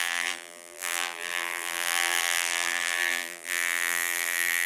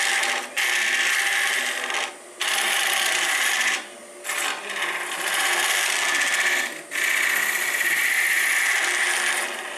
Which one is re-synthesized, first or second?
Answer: first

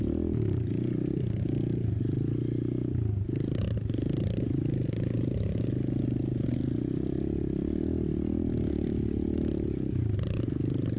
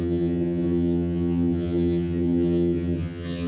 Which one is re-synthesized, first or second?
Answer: second